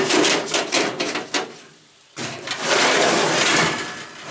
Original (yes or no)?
no